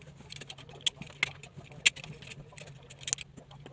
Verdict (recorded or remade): recorded